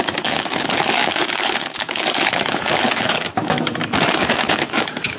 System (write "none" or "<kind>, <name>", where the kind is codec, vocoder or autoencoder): autoencoder, DAC-VAE